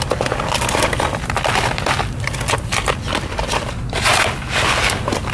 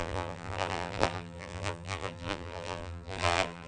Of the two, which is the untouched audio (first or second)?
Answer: first